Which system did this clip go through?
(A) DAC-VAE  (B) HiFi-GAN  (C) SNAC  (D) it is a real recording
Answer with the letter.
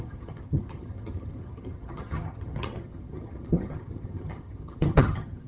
B